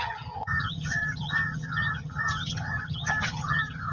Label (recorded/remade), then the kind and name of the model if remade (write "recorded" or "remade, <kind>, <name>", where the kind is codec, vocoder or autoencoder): remade, vocoder, HiFi-GAN